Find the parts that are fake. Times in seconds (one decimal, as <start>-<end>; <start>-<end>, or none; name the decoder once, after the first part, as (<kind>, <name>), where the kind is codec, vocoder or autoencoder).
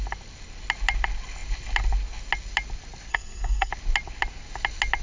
3.1-3.7 (codec, SNAC)